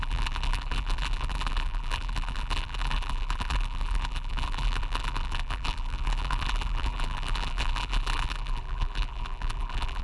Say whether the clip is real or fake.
fake